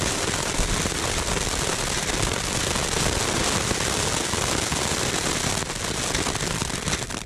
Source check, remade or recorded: recorded